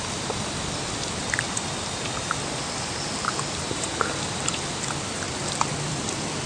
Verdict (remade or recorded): remade